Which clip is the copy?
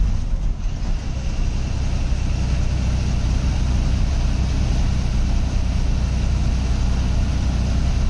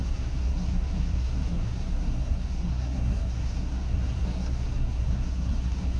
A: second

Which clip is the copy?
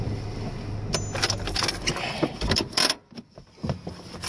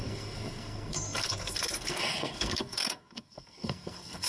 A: second